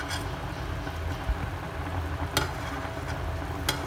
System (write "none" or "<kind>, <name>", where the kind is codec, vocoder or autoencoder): none